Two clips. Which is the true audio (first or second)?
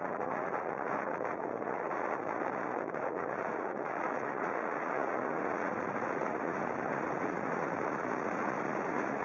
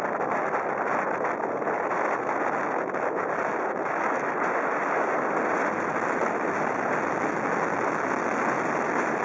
second